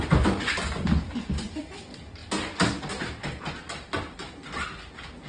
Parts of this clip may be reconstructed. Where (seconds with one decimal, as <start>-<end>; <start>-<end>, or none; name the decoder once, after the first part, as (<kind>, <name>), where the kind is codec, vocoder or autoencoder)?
none